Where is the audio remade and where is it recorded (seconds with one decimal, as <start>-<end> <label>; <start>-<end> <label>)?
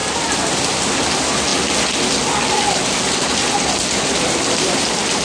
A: 0.0-5.2 recorded